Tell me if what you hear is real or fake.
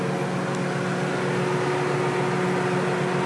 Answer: real